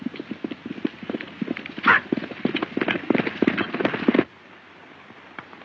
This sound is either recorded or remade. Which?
recorded